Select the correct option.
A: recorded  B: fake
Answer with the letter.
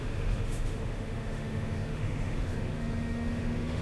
B